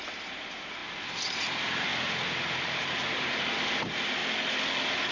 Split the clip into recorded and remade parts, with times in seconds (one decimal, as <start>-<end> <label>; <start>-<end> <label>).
0.0-0.8 remade; 0.8-1.3 recorded; 1.3-1.9 remade; 1.9-2.7 recorded; 2.7-4.2 remade; 4.2-5.1 recorded